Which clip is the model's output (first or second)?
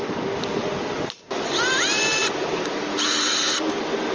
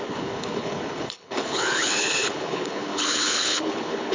second